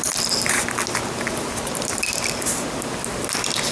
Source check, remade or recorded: recorded